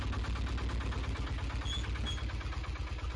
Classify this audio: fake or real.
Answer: real